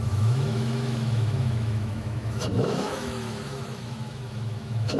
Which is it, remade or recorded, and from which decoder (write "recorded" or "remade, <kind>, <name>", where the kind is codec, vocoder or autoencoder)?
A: remade, autoencoder, DAC-VAE